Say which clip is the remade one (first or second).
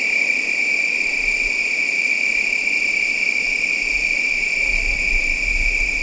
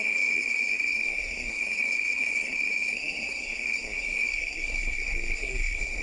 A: second